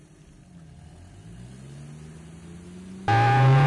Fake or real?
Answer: real